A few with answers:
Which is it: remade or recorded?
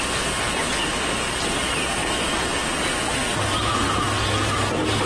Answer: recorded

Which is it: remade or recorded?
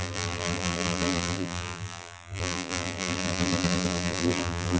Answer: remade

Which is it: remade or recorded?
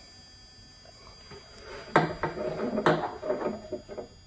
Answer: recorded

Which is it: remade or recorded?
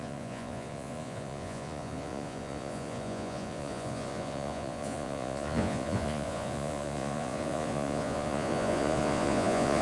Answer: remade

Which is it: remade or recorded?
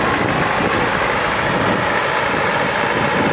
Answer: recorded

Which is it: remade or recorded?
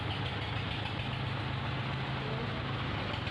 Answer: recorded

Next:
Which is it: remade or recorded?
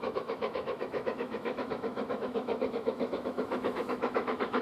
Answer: remade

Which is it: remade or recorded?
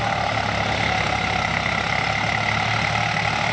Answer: recorded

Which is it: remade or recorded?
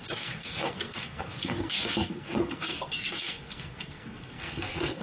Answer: remade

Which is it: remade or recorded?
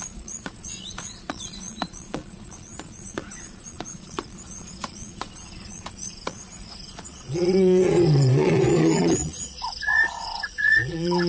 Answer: remade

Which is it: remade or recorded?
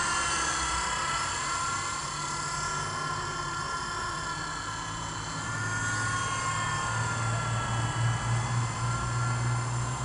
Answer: recorded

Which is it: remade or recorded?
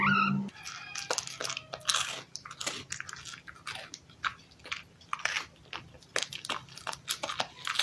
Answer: recorded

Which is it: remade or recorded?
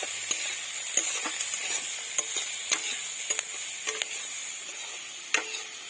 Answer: recorded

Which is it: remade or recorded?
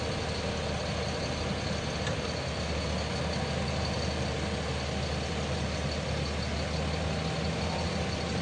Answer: recorded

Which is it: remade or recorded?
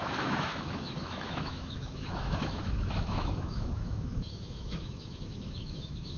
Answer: remade